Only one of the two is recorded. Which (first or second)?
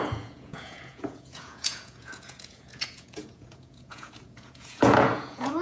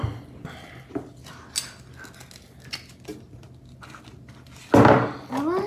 second